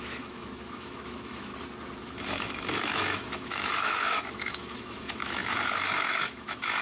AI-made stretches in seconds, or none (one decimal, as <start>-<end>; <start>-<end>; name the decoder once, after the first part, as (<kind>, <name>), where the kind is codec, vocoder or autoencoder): 0.0-1.5 (autoencoder, DAC-VAE); 2.0-6.8